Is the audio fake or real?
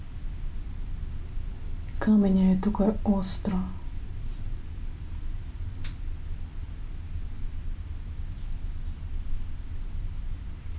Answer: real